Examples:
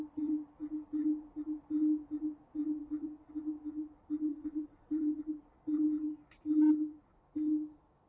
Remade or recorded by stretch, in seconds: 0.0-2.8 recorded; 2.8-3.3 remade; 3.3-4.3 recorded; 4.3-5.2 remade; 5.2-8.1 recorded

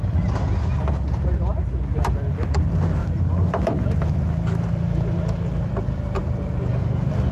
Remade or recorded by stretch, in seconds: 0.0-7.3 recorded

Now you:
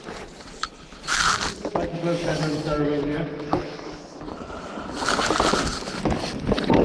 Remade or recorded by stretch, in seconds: 0.0-2.3 recorded; 2.3-4.0 remade; 4.0-6.8 recorded

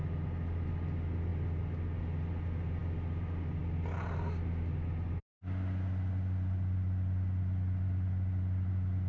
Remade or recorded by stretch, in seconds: 0.0-9.1 recorded

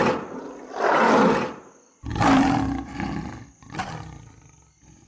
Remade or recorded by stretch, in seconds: 0.0-5.1 recorded

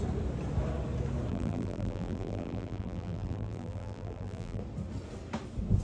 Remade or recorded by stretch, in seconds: 0.0-1.3 recorded; 1.3-4.6 remade; 4.6-5.8 recorded

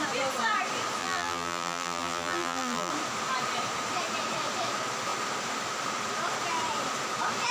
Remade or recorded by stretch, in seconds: 0.0-1.0 recorded; 1.0-2.9 remade; 2.9-7.5 recorded

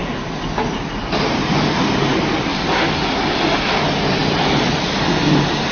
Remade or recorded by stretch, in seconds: 0.0-5.7 recorded